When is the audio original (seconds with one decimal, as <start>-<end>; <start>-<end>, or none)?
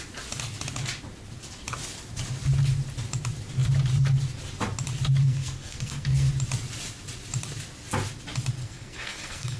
0.0-5.2; 6.3-8.6